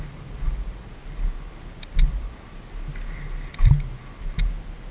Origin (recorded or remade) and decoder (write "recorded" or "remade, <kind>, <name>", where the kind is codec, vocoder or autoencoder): recorded